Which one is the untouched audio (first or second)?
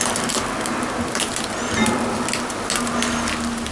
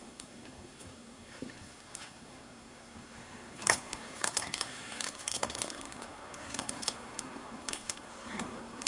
first